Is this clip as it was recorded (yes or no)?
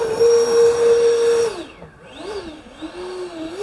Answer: yes